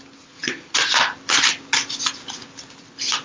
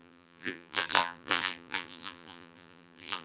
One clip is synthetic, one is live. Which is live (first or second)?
first